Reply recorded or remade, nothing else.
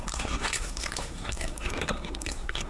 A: remade